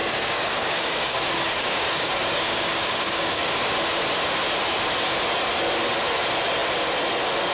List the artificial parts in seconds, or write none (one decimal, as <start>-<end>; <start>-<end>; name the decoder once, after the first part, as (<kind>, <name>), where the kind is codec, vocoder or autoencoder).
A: 0.0-3.5 (codec, DAC)